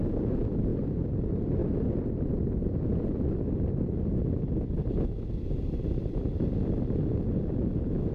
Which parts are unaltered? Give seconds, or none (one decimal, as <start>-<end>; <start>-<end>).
0.0-0.7; 1.2-8.1